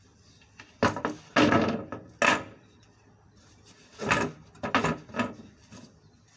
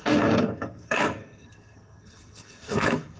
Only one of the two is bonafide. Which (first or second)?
first